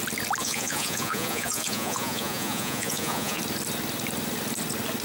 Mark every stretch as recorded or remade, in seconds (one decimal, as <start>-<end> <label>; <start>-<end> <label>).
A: 0.0-0.4 recorded; 0.4-3.4 remade; 3.4-5.0 recorded